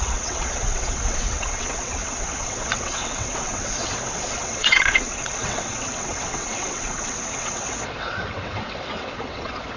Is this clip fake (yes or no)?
yes